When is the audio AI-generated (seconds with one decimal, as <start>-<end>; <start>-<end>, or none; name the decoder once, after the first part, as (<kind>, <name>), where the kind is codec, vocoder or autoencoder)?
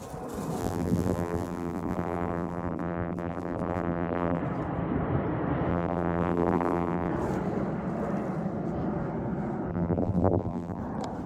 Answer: 0.6-4.4 (vocoder, BigVGAN v2); 5.7-7.1; 9.7-10.8